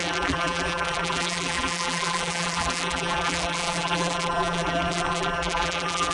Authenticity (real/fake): fake